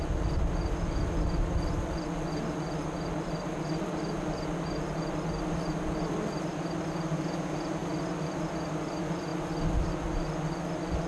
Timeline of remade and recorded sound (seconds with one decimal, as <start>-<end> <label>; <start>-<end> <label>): 0.0-11.1 recorded